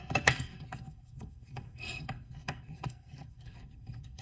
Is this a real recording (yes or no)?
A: no